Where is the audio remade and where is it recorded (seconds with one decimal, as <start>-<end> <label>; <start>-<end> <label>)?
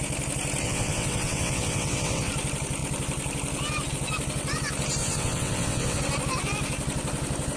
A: 0.0-0.6 recorded; 0.6-2.3 remade; 2.3-5.0 recorded; 5.0-6.0 remade; 6.0-7.6 recorded